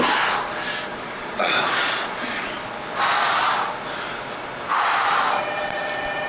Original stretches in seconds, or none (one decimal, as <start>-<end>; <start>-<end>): 0.0-0.9; 2.7-6.3